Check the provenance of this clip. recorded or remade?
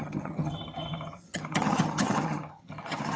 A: remade